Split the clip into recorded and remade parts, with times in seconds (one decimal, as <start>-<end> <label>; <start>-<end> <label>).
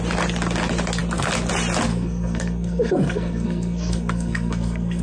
0.0-1.9 recorded; 1.9-5.0 remade